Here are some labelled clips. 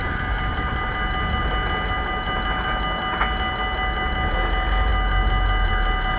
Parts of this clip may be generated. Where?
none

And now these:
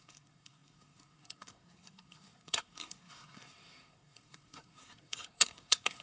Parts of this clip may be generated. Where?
0.0-6.0 (codec, SNAC)

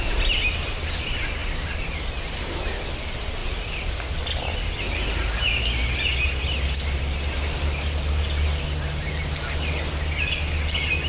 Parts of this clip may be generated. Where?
none

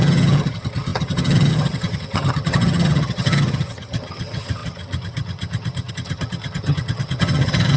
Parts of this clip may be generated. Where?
0.0-7.8 (vocoder, HiFi-GAN)

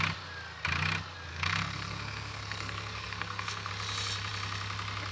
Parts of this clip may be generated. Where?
1.3-3.7 (codec, SNAC)

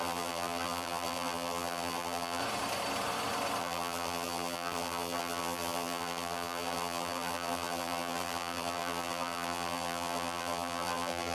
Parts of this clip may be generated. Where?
0.0-2.4 (vocoder, BigVGAN v2); 3.6-11.3

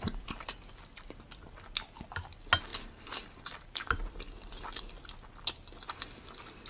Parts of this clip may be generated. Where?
2.7-3.6 (vocoder, BigVGAN v2)

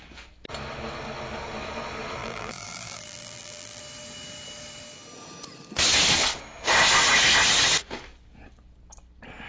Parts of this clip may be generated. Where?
2.2-3.8 (vocoder, BigVGAN v2)